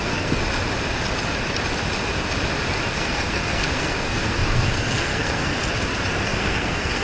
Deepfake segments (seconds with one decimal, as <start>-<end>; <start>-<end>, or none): 0.0-0.4; 2.9-5.5; 6.2-7.0